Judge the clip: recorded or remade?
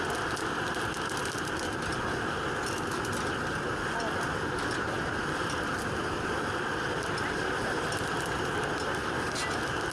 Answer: recorded